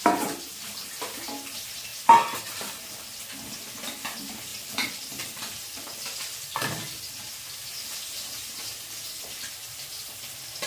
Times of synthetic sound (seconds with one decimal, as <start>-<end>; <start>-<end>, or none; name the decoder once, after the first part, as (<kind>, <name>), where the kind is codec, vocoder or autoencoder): 1.9-2.9 (vocoder, BigVGAN v2); 4.5-7.0